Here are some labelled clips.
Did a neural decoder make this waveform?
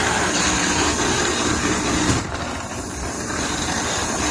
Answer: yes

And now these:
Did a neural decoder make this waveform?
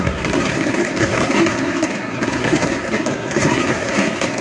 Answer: yes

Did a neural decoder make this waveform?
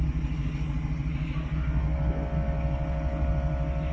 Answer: no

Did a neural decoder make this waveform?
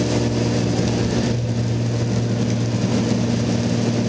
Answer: no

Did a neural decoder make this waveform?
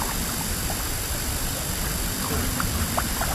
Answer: no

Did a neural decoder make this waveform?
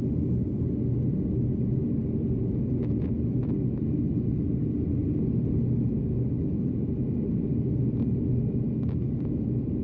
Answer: no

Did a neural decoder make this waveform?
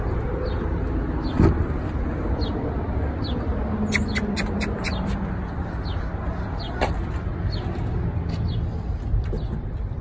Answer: no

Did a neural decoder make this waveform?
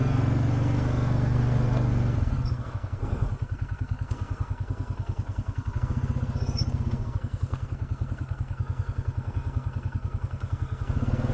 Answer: yes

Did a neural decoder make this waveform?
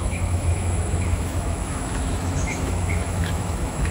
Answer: yes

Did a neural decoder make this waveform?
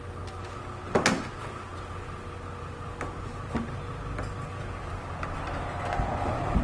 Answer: no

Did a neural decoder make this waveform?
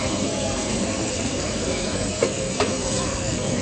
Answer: yes